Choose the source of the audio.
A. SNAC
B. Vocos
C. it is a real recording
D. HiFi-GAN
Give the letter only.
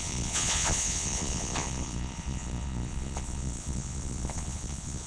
B